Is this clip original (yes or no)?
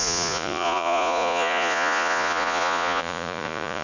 no